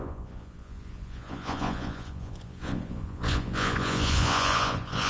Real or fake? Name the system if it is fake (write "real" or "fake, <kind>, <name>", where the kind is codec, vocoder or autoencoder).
fake, vocoder, Vocos